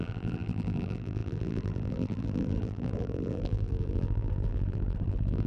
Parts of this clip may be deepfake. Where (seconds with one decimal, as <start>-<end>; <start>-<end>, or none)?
0.0-5.5